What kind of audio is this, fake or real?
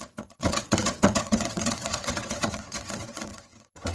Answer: fake